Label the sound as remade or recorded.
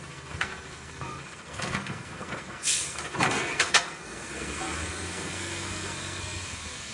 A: remade